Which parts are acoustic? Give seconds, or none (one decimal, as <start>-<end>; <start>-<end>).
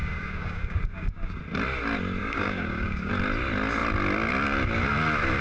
1.4-2.2; 3.1-5.4